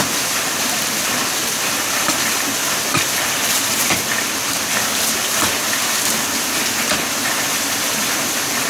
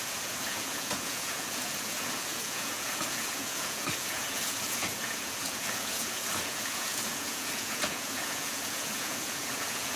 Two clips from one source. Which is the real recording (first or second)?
first